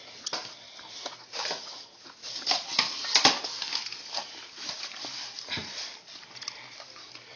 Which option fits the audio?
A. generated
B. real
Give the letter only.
A